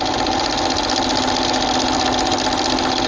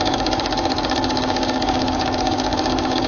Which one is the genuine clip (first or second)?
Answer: first